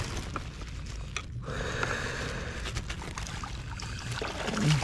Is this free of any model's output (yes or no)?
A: yes